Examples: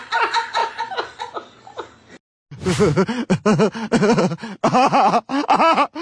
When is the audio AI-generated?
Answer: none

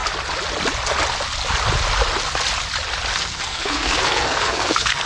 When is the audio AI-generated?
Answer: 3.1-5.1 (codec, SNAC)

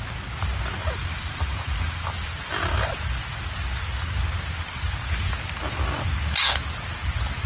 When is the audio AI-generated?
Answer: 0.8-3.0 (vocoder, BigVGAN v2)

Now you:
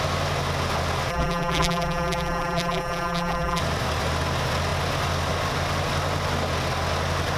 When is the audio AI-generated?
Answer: 1.1-3.6 (vocoder, BigVGAN v2)

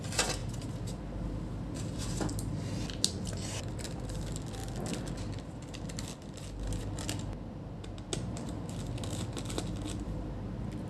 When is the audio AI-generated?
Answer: none

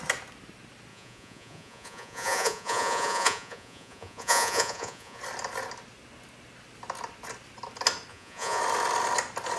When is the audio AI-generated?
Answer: 0.9-5.2 (vocoder, Vocos); 8.1-8.6